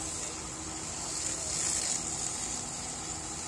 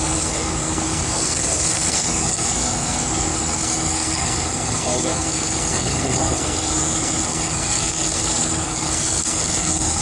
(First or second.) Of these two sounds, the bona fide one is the first